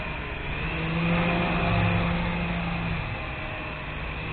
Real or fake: real